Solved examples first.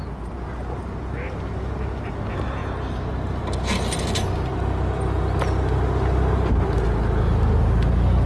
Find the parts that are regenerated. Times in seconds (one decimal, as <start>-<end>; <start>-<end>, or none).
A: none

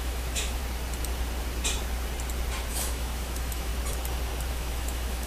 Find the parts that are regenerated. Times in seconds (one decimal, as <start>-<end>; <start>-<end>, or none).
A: 0.0-0.6; 2.7-3.7; 4.5-5.3

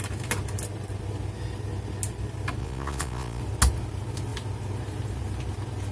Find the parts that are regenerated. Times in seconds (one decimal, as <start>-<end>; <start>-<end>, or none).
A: 2.6-3.4

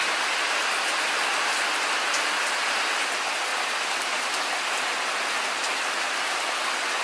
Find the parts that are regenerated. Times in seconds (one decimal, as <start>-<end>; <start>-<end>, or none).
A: none

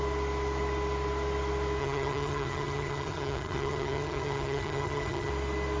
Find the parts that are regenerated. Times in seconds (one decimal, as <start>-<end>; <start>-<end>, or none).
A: 1.8-5.3